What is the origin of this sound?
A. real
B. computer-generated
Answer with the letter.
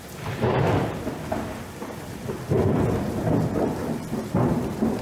B